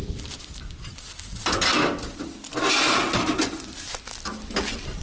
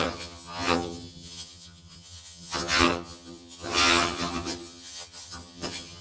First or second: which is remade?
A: second